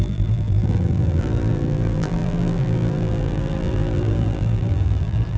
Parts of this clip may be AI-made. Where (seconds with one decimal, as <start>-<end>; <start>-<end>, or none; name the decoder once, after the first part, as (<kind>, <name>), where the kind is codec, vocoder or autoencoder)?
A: 0.0-5.4 (vocoder, BigVGAN v2)